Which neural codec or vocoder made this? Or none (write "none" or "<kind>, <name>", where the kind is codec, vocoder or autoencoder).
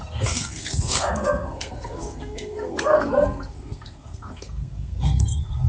codec, SNAC